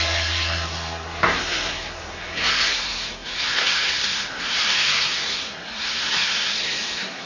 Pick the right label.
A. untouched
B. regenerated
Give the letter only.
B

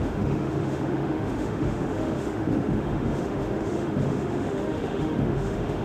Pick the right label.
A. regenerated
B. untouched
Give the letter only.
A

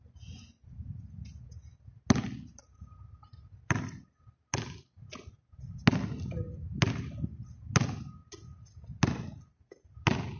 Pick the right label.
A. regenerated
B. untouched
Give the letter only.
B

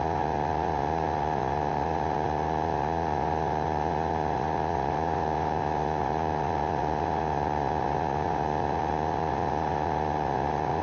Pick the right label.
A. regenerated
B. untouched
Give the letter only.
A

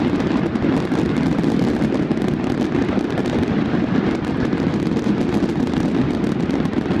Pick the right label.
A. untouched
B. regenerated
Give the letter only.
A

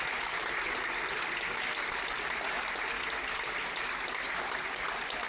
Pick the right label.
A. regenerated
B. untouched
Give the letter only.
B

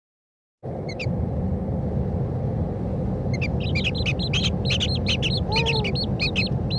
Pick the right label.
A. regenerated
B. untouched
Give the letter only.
B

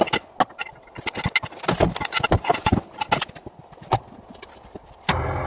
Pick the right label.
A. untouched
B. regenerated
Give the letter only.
A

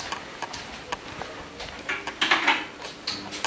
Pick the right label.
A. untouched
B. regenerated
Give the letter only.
A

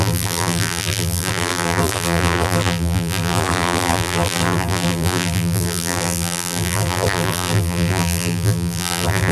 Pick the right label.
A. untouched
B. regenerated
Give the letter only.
B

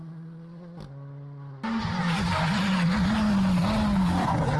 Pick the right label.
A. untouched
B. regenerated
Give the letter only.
A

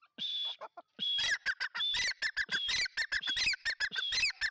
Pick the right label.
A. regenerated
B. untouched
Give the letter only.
B